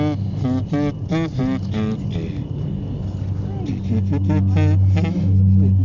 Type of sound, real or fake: real